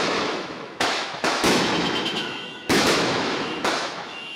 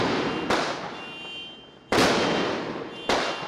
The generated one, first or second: first